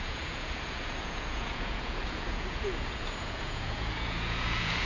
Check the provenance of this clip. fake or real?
fake